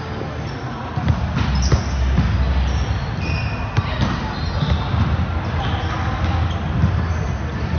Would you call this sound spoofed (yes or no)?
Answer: no